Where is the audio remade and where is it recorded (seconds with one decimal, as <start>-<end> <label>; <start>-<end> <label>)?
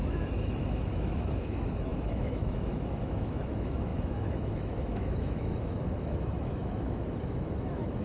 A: 0.0-8.0 remade